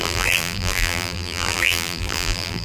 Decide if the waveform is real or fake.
fake